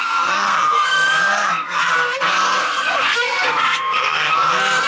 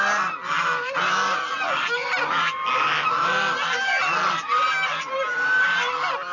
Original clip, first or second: second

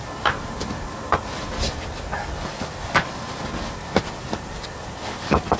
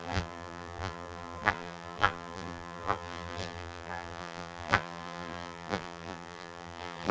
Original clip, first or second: first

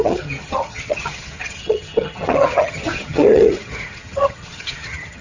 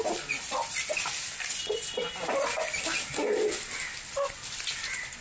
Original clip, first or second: second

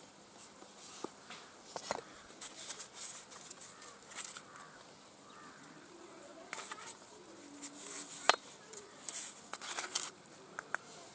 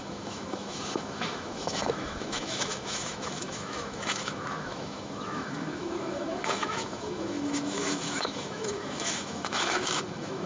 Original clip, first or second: first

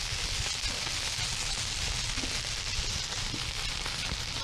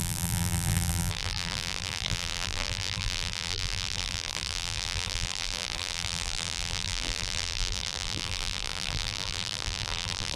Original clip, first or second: first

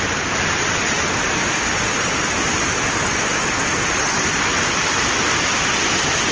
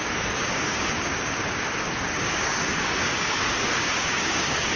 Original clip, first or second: first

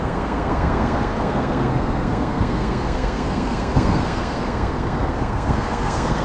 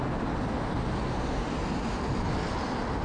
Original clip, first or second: second